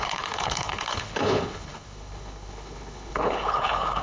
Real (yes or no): no